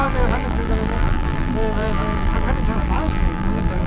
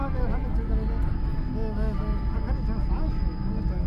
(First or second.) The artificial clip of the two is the first